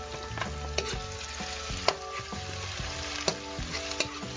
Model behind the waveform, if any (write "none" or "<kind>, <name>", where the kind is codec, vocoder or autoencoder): none